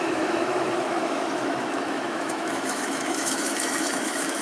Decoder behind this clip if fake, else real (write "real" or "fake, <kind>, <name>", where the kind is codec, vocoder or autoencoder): fake, autoencoder, DAC-VAE